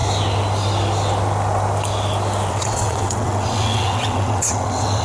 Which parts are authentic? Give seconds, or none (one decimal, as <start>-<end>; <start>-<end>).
0.0-2.5